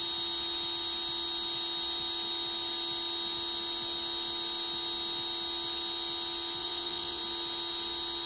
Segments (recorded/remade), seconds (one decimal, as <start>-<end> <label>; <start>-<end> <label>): 0.0-6.6 recorded; 6.6-7.2 remade; 7.2-8.3 recorded